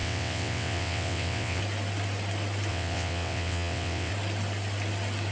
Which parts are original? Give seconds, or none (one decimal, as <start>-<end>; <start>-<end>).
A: 1.6-2.7; 4.1-5.3